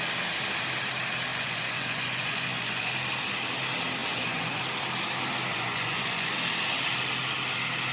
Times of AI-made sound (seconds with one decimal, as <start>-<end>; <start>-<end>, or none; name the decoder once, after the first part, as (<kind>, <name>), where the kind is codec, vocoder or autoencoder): 1.3-2.9 (vocoder, Vocos); 4.0-4.6; 5.5-6.3